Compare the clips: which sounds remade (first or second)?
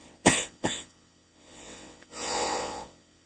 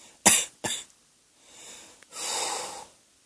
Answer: first